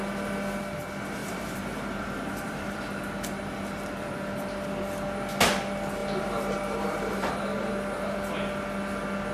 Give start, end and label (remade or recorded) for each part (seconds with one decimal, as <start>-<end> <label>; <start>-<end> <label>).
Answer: 0.0-1.2 recorded; 1.2-2.9 remade; 2.9-6.0 recorded; 6.0-7.3 remade; 7.3-9.3 recorded